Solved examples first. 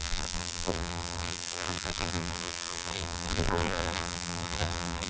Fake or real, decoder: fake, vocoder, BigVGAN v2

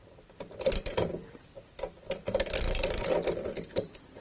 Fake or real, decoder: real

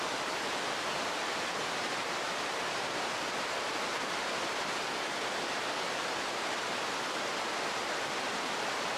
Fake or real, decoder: fake, vocoder, BigVGAN v2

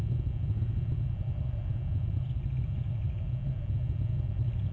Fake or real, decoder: real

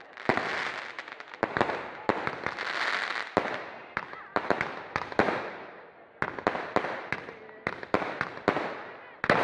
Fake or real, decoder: real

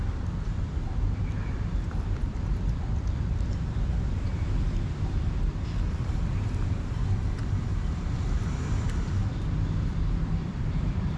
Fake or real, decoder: fake, vocoder, BigVGAN v2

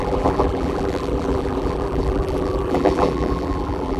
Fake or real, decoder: fake, vocoder, BigVGAN v2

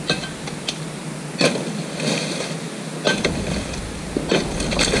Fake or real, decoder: real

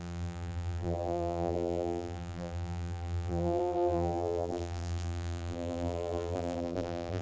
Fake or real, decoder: fake, vocoder, BigVGAN v2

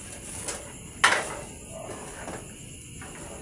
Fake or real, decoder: real